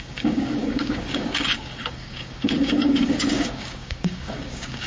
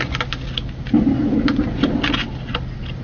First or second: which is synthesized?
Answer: first